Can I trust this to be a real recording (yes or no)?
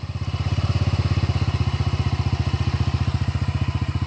yes